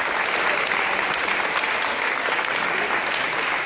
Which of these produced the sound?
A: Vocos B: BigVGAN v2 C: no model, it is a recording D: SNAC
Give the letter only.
C